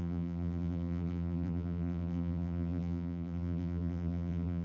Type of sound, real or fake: fake